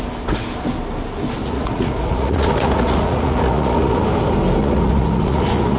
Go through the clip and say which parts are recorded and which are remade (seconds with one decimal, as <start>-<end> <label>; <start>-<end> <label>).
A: 0.0-1.4 recorded; 1.4-4.0 remade; 4.0-4.6 recorded; 4.6-5.8 remade